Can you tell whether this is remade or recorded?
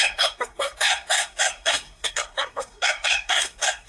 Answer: remade